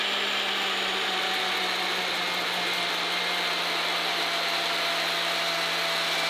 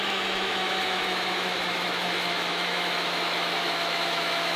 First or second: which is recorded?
first